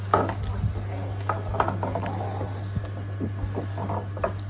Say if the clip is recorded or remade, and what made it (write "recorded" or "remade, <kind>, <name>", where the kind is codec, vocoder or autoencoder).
recorded